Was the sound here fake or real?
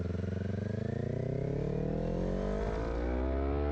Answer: real